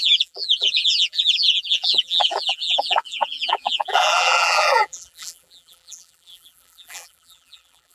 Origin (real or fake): fake